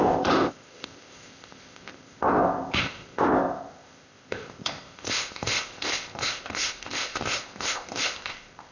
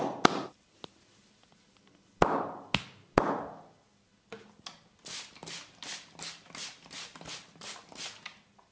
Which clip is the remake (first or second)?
first